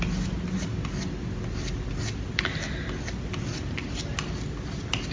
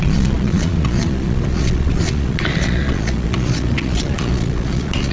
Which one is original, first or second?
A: first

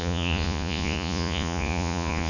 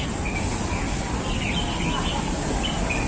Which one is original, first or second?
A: second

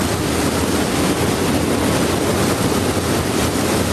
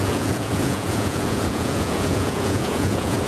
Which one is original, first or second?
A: first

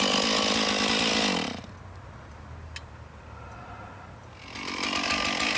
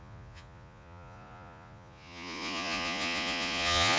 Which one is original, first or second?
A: first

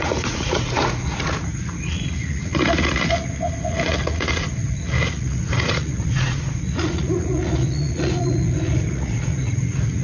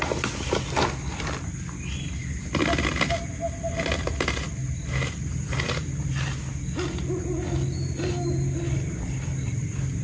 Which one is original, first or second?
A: second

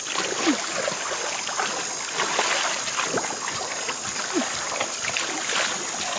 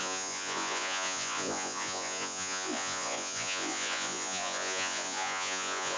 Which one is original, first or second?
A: first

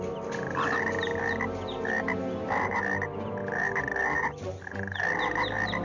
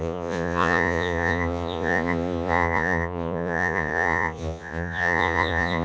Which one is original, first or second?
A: first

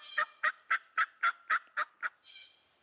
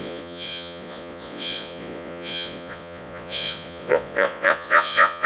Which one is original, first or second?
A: first